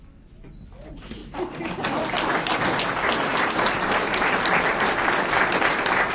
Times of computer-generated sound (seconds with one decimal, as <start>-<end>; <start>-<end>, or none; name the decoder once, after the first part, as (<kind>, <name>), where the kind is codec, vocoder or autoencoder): 0.0-1.2 (vocoder, BigVGAN v2); 1.8-2.3

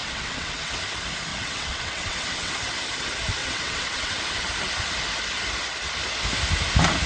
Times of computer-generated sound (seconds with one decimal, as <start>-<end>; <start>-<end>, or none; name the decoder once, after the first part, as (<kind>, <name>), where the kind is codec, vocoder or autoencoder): 0.0-0.8 (vocoder, WaveNeXt); 1.3-2.5; 3.4-4.2

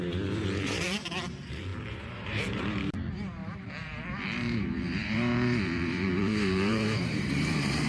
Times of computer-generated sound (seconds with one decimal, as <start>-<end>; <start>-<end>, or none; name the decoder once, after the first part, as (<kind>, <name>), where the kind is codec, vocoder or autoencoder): 0.0-7.9 (vocoder, BigVGAN v2)

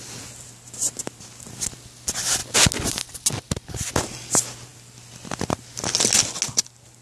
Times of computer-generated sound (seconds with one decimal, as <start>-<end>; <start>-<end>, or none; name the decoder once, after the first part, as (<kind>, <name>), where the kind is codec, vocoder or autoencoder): none

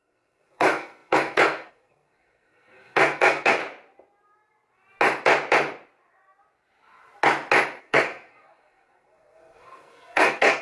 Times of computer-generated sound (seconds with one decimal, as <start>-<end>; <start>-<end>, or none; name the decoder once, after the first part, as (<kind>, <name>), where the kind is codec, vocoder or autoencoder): 0.0-3.6 (codec, SNAC); 7.8-10.6